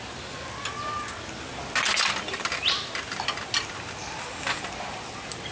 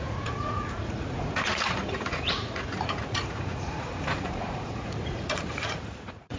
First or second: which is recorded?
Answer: first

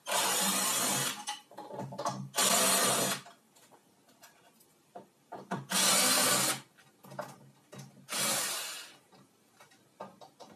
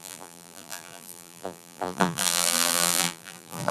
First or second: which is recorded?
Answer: first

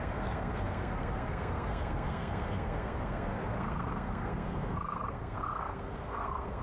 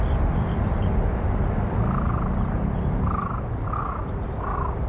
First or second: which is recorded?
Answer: second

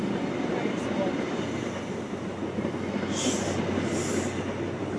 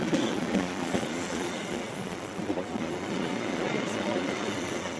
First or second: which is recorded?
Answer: first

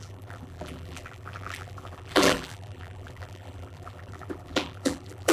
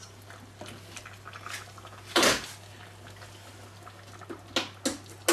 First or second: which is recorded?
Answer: second